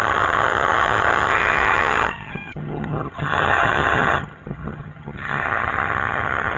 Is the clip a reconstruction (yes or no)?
yes